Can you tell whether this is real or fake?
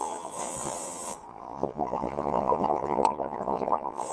fake